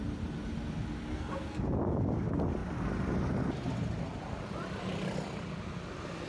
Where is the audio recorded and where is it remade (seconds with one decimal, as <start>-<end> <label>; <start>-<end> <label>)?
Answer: 0.0-1.1 recorded; 1.1-1.6 remade; 1.6-6.3 recorded